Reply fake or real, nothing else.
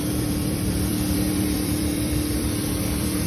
fake